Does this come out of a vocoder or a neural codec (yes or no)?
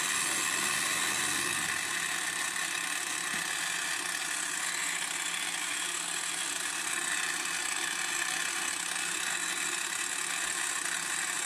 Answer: no